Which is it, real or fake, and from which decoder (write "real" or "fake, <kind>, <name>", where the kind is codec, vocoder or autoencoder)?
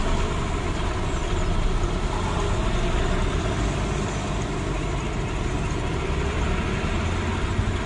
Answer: real